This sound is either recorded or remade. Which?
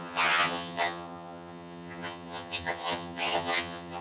remade